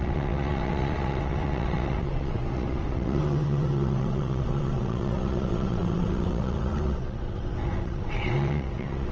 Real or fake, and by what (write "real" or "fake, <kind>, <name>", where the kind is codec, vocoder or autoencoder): fake, vocoder, WaveNeXt